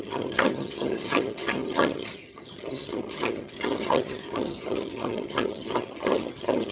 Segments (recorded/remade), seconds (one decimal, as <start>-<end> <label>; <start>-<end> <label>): 0.0-6.7 remade